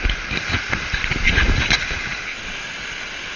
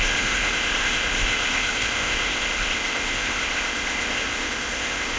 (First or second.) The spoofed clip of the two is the second